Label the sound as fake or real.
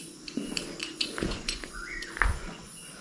fake